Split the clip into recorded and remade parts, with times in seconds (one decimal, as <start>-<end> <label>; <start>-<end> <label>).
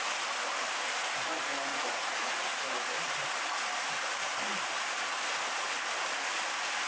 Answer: 0.0-1.7 recorded; 1.7-2.6 remade; 2.6-6.9 recorded